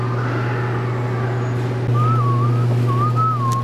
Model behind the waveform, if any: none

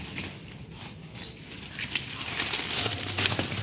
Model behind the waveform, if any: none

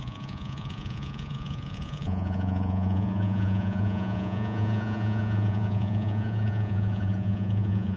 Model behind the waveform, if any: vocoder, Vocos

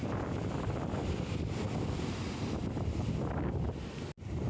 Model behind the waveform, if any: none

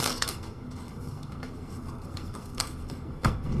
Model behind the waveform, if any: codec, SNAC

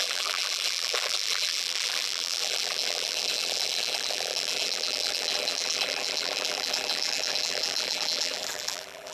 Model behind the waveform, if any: vocoder, BigVGAN v2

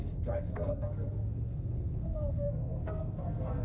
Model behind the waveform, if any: codec, SNAC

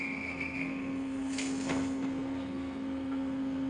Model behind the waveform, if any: codec, SNAC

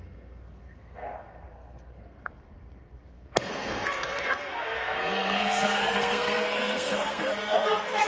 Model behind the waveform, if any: codec, SNAC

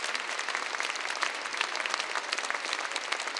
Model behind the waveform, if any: none